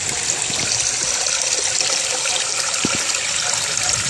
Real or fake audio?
real